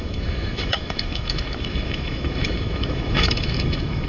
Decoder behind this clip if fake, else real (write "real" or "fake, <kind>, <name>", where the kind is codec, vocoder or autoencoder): fake, autoencoder, DAC-VAE